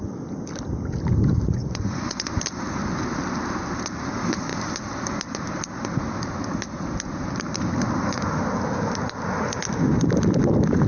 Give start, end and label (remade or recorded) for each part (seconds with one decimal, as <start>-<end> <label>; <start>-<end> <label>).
0.0-1.6 recorded; 1.6-2.3 remade; 2.3-10.9 recorded